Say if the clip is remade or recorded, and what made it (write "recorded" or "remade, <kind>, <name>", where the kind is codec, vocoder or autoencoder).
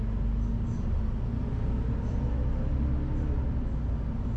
recorded